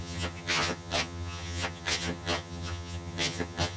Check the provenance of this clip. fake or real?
fake